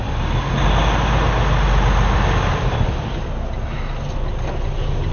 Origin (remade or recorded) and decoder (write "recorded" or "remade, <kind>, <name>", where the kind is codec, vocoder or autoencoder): recorded